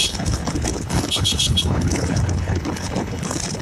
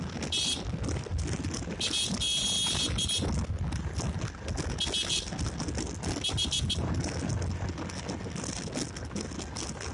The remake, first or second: first